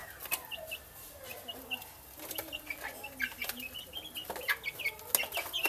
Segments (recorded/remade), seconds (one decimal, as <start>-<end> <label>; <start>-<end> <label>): 0.0-5.7 recorded